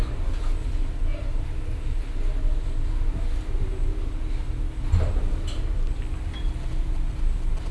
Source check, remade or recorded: recorded